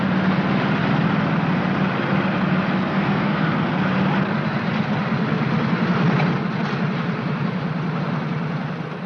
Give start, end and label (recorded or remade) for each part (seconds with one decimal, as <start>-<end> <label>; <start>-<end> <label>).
0.0-2.9 recorded; 2.9-3.5 remade; 3.5-9.1 recorded